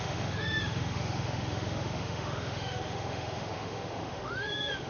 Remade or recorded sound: remade